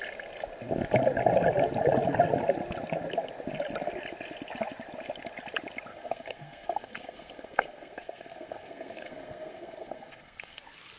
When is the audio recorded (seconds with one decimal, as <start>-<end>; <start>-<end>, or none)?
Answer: 0.0-5.9; 10.6-11.0